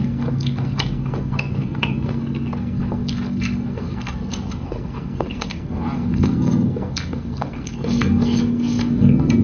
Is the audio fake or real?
fake